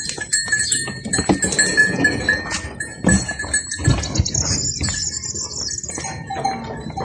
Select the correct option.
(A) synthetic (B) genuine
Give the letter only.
B